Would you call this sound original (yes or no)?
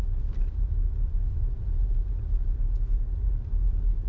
yes